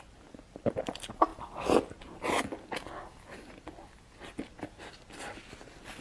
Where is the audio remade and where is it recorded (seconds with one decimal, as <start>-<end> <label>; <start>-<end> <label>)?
0.0-6.0 recorded